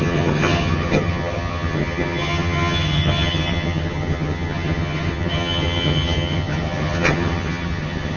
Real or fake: fake